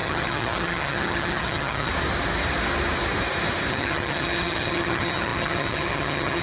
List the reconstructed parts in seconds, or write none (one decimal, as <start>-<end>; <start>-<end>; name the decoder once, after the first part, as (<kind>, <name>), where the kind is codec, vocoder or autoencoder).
0.0-1.9 (vocoder, HiFi-GAN); 3.7-6.4